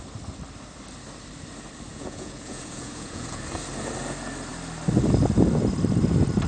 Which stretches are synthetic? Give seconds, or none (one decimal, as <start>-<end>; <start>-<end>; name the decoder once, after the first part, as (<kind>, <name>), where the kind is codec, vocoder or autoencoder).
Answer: 1.9-3.4 (vocoder, Vocos)